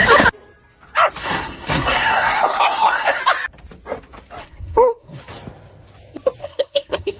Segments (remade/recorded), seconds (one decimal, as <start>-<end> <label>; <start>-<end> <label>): 0.0-1.2 recorded; 1.2-3.2 remade; 3.2-4.4 recorded; 4.4-5.2 remade; 5.2-6.4 recorded; 6.4-7.2 remade